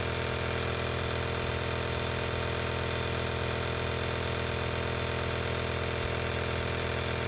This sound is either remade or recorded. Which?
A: recorded